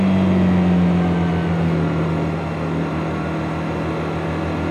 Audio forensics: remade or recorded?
recorded